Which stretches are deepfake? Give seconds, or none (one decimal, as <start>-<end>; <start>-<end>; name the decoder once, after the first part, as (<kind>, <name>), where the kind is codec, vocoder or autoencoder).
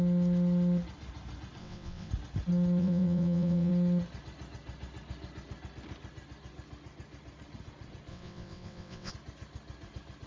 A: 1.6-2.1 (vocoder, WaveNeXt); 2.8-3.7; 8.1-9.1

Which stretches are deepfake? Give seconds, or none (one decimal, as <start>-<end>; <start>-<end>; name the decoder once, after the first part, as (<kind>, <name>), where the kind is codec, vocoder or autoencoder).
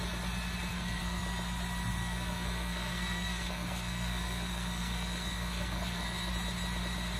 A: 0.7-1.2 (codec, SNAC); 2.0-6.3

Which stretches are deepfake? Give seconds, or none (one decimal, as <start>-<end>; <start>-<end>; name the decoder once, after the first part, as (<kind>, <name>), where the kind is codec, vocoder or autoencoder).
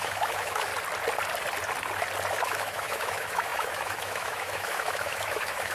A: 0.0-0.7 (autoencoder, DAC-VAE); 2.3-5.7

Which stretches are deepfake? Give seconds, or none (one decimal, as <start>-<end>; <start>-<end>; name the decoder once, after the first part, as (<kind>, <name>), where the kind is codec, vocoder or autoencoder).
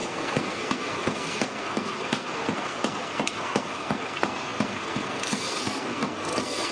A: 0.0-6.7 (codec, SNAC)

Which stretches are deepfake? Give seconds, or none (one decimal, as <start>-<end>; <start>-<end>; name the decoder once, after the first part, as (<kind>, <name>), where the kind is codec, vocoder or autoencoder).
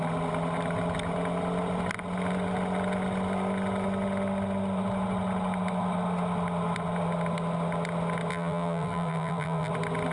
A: 8.3-9.7 (vocoder, BigVGAN v2)